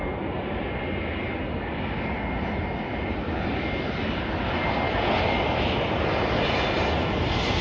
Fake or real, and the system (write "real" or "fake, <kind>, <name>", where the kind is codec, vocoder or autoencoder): real